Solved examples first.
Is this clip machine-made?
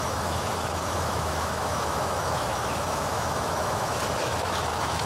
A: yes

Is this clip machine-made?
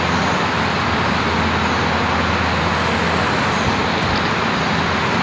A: no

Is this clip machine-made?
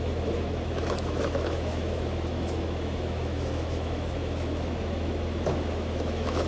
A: yes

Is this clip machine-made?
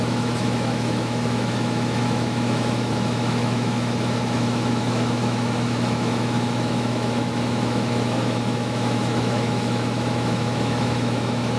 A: yes